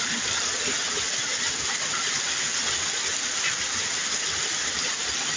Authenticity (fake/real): real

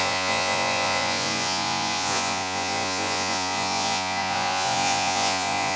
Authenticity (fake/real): fake